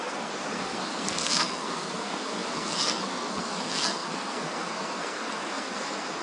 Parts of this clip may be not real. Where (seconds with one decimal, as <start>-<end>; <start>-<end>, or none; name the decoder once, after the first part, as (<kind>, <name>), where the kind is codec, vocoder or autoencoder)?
0.0-6.2 (codec, SNAC)